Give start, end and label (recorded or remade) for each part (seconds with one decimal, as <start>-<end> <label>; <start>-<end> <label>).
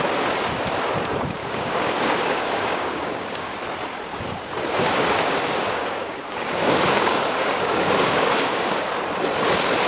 0.0-1.4 recorded; 1.4-3.5 remade; 3.5-4.7 recorded; 4.7-8.9 remade; 8.9-9.9 recorded